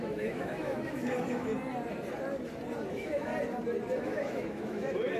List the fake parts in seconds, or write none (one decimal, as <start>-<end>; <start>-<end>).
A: 0.0-1.5; 2.9-3.3; 4.0-5.2